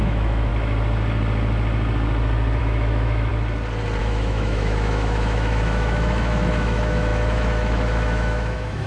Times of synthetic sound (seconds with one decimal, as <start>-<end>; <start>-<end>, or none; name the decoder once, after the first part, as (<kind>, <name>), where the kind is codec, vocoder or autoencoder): 0.0-0.5 (autoencoder, DAC-VAE); 2.6-3.3; 4.0-8.9